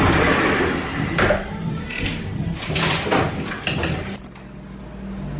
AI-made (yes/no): no